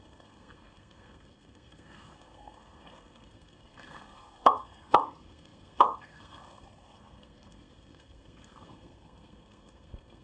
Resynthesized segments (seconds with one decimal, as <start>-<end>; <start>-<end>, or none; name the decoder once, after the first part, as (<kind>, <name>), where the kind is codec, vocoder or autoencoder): 0.0-10.2 (codec, SNAC)